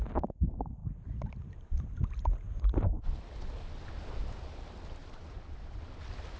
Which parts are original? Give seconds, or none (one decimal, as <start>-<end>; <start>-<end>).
0.0-0.8; 3.0-5.0; 5.8-6.4